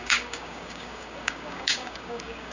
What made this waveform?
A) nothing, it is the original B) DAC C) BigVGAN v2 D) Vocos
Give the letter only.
B